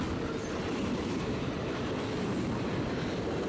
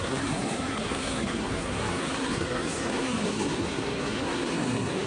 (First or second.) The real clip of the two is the first